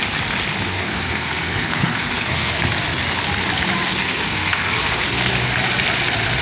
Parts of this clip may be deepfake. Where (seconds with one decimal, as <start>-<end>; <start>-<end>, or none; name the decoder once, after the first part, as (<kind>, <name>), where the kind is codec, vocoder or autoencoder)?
0.7-2.6 (codec, SNAC); 4.0-5.3